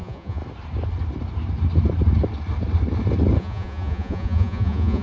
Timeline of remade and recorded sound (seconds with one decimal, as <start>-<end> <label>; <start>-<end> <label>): 0.0-0.4 remade; 0.4-3.4 recorded; 3.4-5.0 remade